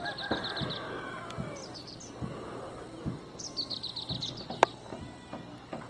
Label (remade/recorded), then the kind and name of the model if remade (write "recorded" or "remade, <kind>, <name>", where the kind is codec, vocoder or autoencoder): recorded